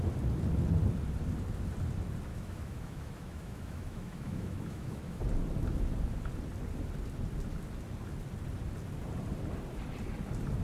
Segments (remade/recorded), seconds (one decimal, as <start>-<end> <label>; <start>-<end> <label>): 0.0-2.3 recorded; 2.3-5.2 remade; 5.2-10.6 recorded